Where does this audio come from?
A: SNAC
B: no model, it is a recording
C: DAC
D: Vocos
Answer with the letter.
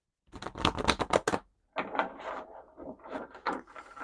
B